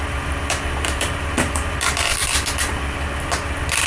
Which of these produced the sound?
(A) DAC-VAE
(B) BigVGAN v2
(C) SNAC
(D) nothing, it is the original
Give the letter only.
D